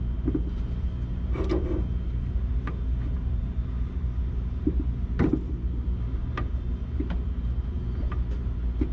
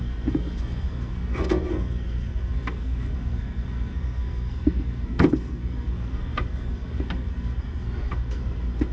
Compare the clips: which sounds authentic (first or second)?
first